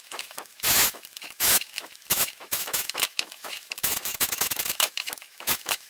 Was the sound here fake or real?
fake